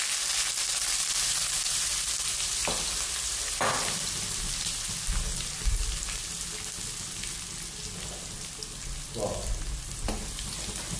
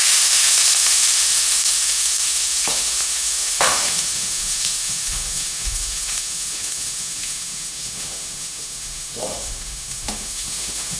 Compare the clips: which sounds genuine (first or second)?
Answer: first